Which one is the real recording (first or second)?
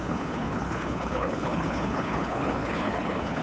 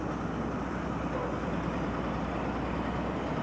second